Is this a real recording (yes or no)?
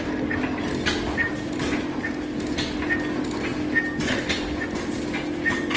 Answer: yes